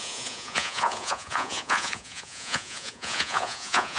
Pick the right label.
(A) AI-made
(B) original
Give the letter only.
A